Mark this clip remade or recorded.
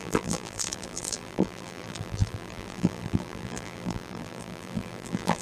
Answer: remade